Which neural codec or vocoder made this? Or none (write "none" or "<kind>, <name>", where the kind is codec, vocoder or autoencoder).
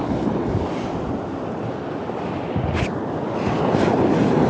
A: none